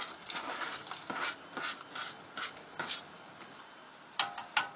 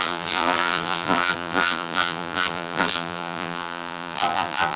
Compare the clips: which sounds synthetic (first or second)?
second